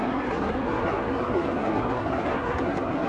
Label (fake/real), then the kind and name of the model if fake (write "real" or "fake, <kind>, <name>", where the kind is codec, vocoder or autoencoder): fake, codec, SNAC